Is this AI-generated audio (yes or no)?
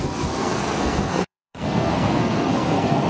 yes